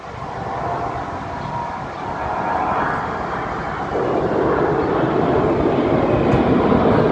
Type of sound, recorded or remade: recorded